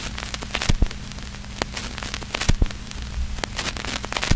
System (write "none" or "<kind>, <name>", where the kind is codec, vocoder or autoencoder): none